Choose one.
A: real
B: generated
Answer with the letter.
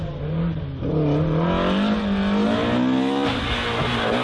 A